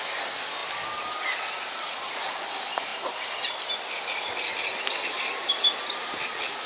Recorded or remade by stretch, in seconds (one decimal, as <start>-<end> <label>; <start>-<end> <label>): 0.0-6.7 recorded